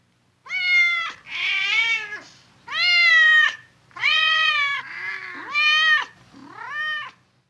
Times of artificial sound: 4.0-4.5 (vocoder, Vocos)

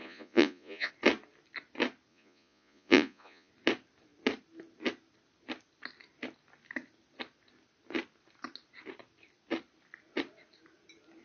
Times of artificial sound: 0.0-0.9 (vocoder, Vocos); 2.1-3.5

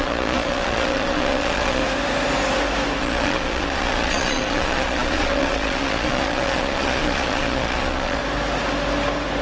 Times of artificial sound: 0.0-1.8 (vocoder, Vocos); 3.0-8.2

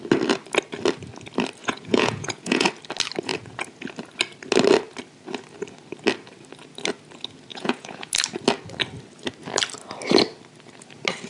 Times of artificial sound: 1.6-2.7 (vocoder, Vocos); 7.5-8.1

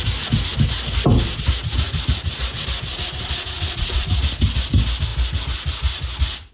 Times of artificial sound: 2.9-4.2 (vocoder, Vocos)